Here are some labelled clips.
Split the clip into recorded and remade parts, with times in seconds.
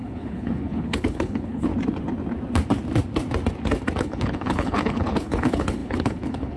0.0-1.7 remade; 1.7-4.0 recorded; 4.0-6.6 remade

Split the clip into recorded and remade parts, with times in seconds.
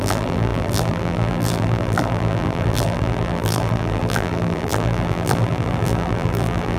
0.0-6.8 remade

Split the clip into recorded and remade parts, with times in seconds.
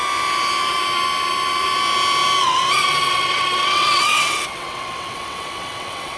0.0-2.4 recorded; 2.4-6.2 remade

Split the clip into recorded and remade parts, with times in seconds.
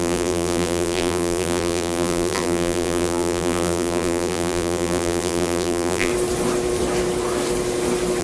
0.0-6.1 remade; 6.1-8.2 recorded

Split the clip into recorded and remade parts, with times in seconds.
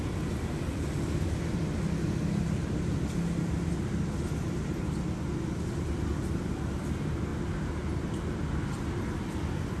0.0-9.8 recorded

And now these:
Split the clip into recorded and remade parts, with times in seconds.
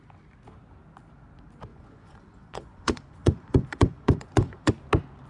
0.0-1.7 recorded; 1.7-4.7 remade; 4.7-5.3 recorded